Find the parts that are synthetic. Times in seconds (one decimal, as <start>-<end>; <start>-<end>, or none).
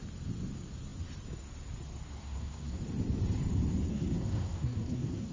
2.2-2.8; 3.9-5.3